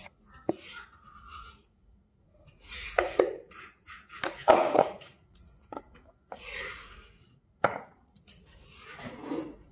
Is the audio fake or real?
fake